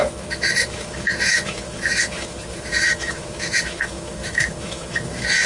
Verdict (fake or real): fake